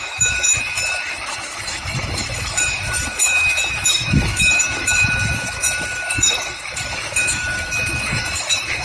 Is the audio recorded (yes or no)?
no